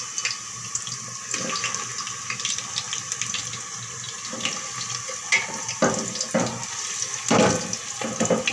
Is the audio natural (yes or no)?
yes